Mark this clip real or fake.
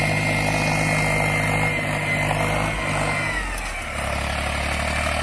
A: real